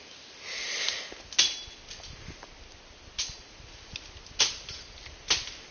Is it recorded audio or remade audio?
recorded